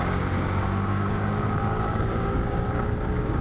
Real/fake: fake